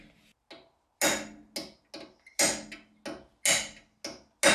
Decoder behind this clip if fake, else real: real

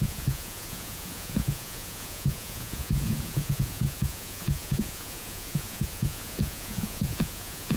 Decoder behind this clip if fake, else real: fake, vocoder, Vocos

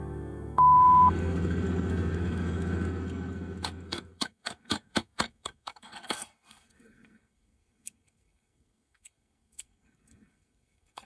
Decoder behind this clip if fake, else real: fake, codec, SNAC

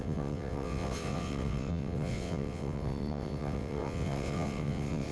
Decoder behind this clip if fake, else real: fake, vocoder, WaveNeXt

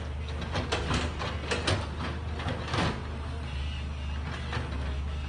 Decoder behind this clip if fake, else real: real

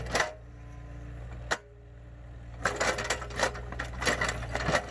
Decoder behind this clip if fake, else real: real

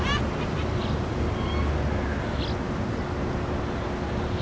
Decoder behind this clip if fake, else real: real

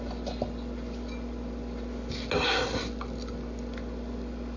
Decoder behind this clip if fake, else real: real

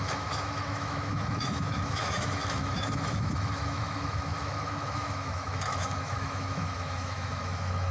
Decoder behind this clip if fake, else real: fake, autoencoder, DAC-VAE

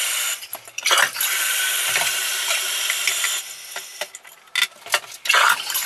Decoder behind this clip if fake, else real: real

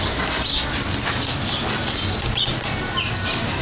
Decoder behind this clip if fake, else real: real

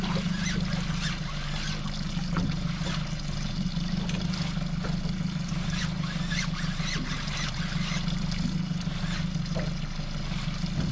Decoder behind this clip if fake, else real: real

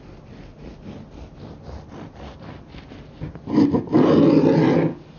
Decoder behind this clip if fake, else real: real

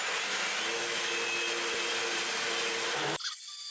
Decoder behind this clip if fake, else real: real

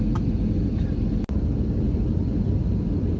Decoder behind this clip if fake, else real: real